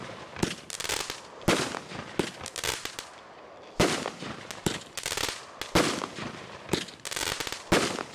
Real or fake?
real